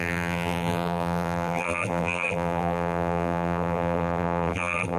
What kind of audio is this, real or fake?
fake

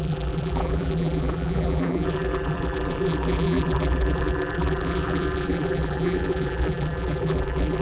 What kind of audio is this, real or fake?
fake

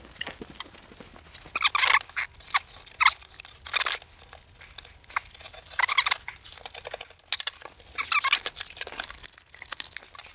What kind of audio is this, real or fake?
real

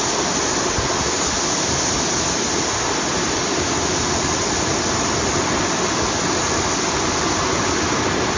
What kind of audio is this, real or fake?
real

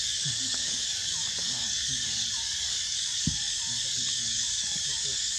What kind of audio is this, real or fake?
fake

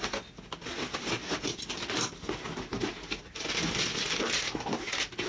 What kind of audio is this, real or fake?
real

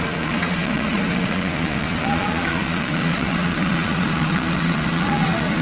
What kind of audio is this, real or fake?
fake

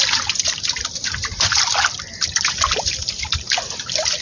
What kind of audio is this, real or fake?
real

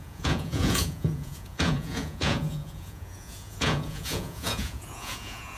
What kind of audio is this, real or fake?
fake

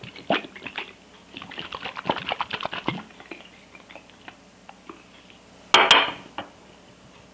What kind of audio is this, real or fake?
real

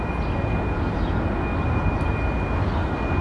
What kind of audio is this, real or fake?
real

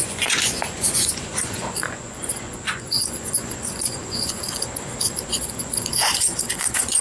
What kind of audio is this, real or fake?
fake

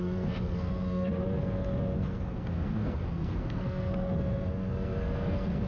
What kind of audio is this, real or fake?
fake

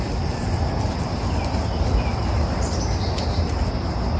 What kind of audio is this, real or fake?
real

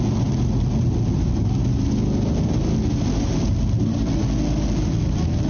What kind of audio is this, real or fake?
real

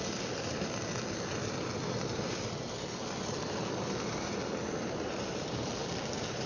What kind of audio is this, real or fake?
real